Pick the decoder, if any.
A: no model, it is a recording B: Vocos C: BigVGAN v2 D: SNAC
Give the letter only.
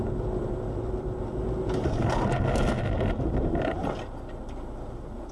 A